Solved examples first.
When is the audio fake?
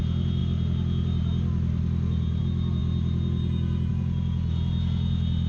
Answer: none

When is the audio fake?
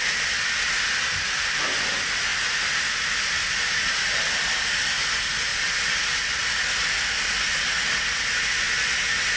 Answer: none